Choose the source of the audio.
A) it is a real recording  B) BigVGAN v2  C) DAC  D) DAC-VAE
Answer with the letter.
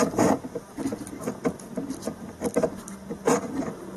A